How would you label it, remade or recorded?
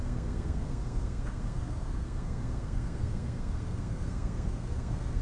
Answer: remade